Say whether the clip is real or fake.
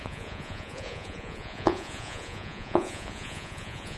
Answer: fake